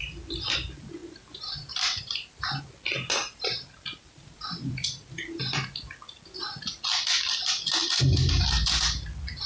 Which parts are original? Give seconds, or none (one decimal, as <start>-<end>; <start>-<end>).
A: 0.0-1.0; 2.6-3.2; 5.4-9.5